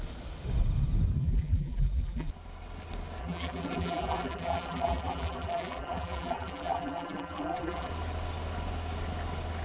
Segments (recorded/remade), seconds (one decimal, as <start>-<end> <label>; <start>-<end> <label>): 0.0-1.2 recorded; 1.2-2.3 remade; 2.3-3.2 recorded; 3.2-7.9 remade; 7.9-9.6 recorded